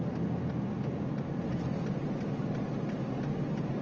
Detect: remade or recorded recorded